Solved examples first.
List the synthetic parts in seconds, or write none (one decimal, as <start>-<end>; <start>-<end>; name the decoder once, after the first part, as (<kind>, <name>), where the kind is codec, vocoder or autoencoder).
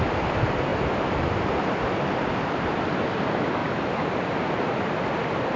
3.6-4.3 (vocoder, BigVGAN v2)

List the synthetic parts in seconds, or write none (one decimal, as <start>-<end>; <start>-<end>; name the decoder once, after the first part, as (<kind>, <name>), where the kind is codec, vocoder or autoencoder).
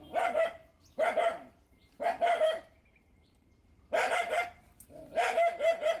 0.0-6.0 (vocoder, BigVGAN v2)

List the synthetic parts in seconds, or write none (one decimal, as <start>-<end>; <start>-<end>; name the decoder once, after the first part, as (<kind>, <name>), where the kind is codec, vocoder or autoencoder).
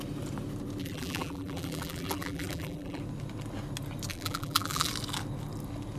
0.8-3.0 (vocoder, BigVGAN v2); 4.1-4.9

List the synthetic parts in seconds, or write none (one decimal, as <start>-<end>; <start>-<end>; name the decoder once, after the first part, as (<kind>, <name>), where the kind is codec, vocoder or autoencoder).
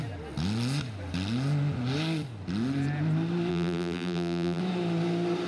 3.5-4.6 (vocoder, BigVGAN v2)